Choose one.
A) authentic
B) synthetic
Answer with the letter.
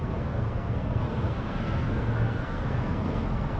B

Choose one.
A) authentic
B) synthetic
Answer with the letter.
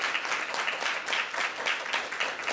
A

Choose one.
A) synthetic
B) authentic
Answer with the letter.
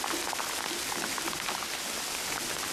B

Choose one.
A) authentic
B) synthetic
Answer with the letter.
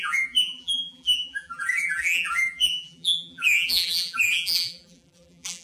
B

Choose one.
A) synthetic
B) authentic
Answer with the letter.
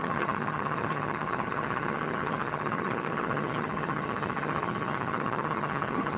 A